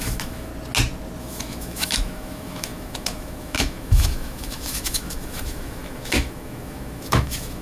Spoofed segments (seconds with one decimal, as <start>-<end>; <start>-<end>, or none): 0.0-0.5; 1.2-7.6